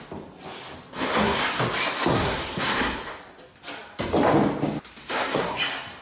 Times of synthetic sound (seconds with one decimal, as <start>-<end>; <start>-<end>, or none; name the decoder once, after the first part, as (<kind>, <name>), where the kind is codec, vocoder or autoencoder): 0.9-1.4 (codec, SNAC); 2.1-3.2; 5.0-5.6

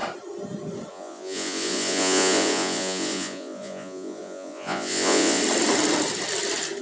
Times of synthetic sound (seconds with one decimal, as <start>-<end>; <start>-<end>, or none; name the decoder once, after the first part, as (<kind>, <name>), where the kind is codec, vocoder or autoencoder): 0.9-5.4 (vocoder, Vocos)

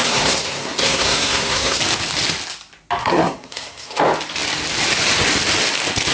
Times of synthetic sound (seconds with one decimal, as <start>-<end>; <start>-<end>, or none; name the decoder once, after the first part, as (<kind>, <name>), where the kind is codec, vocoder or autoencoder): 0.0-1.8 (codec, SNAC); 3.0-4.0

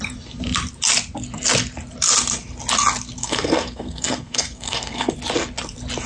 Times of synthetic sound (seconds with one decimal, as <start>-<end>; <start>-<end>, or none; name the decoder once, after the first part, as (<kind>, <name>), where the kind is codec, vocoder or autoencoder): 3.2-5.1 (codec, SNAC)

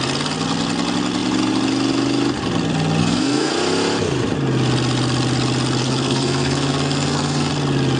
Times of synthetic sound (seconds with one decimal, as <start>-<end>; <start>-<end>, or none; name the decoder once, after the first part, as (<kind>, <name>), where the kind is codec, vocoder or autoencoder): 3.0-3.5 (codec, SNAC); 5.8-7.5